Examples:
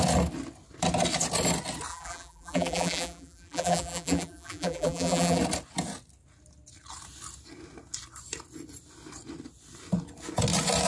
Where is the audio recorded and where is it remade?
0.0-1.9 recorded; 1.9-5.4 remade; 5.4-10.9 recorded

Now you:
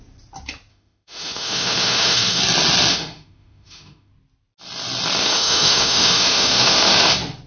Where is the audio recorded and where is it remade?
0.0-0.7 recorded; 0.7-2.4 remade; 2.4-2.9 recorded; 2.9-4.1 remade; 4.1-5.2 recorded; 5.2-7.1 remade; 7.1-7.5 recorded

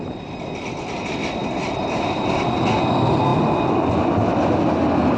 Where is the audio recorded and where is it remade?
0.0-1.4 recorded; 1.4-2.3 remade; 2.3-5.2 recorded

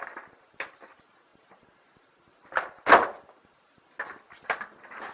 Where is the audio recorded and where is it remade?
0.0-5.1 recorded

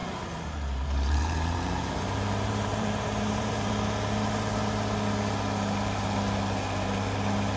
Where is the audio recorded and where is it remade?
0.0-3.7 remade; 3.7-7.6 recorded

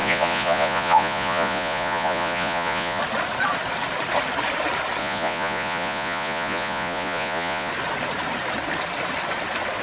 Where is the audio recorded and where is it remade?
0.0-3.0 remade; 3.0-5.0 recorded; 5.0-7.7 remade; 7.7-9.8 recorded